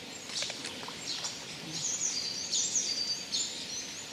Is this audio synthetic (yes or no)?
no